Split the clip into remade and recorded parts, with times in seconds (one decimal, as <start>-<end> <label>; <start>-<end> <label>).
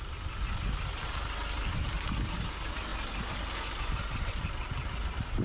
0.0-5.4 recorded